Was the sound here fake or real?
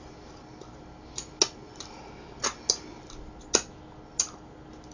real